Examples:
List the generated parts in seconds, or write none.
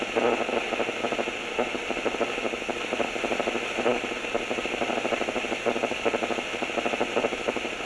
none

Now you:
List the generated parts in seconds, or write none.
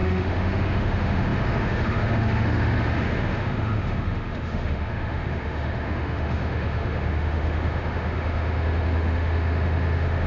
0.0-10.3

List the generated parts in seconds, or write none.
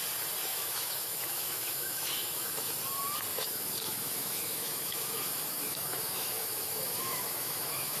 0.5-2.7; 3.3-8.0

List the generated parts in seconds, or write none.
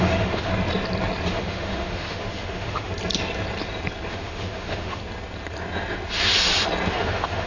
0.0-0.5; 1.3-2.9; 4.1-5.0; 6.9-7.5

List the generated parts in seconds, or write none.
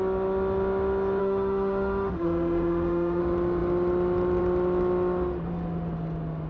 1.2-3.2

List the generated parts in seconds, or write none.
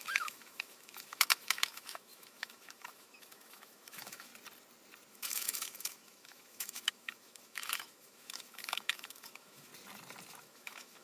0.0-4.3; 5.1-9.7; 10.4-11.0